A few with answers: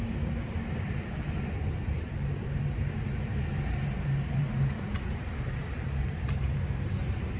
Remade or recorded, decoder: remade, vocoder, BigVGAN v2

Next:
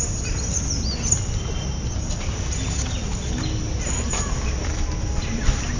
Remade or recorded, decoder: recorded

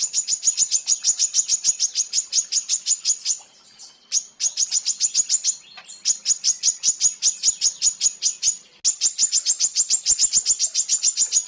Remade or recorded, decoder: recorded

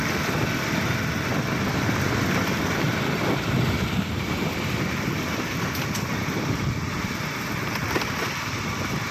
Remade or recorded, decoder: remade, vocoder, BigVGAN v2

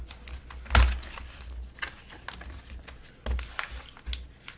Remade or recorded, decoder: recorded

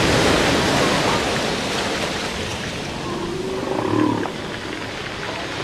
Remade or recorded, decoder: recorded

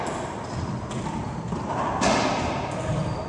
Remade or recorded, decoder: recorded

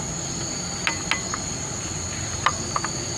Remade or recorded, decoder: recorded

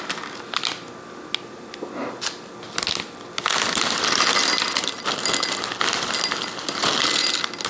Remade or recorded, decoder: recorded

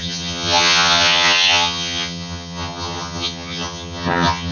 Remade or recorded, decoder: remade, vocoder, HiFi-GAN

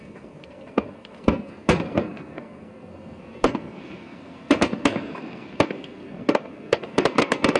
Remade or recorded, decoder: remade, codec, SNAC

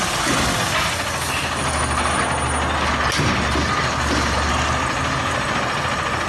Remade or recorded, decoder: recorded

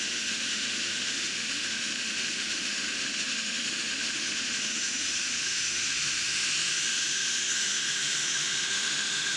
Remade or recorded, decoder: remade, autoencoder, DAC-VAE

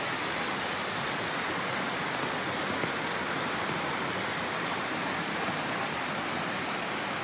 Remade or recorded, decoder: recorded